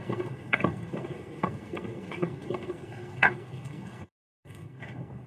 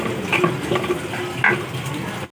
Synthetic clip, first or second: first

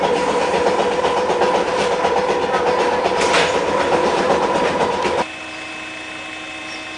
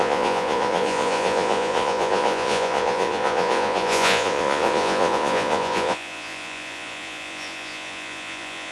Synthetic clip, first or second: second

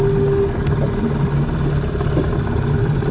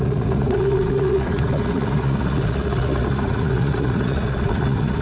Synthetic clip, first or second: second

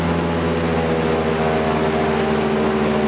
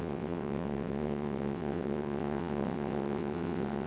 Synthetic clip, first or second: second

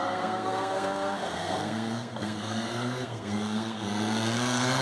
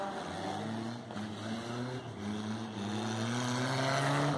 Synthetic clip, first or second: first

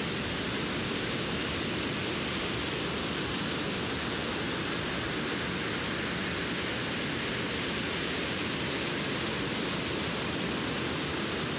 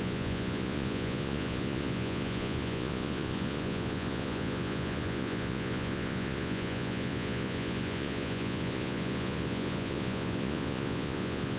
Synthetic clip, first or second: second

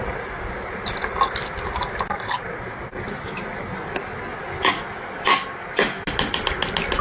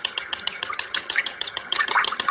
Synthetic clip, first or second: second